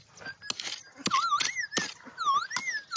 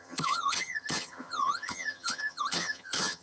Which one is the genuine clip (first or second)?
first